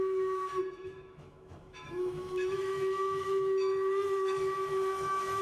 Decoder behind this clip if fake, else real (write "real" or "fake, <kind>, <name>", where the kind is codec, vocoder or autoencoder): fake, autoencoder, DAC-VAE